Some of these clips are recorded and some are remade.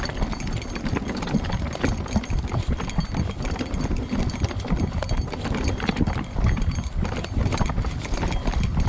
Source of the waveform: recorded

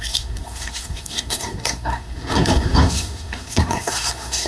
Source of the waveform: remade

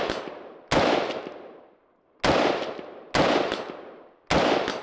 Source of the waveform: recorded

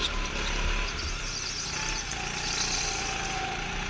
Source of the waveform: recorded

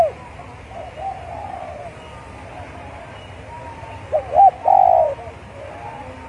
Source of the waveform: recorded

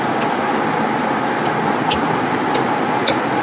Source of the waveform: recorded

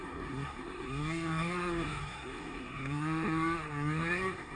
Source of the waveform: remade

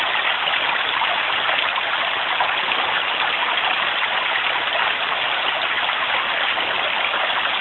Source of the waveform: recorded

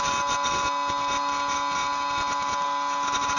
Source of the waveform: recorded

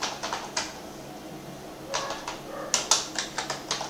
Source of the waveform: recorded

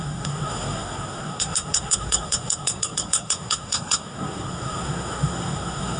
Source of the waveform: remade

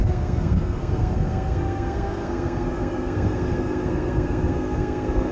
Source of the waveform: remade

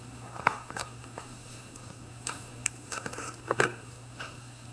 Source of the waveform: remade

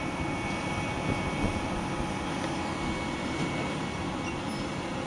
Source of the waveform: recorded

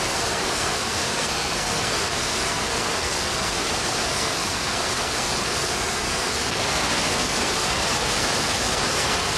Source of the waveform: remade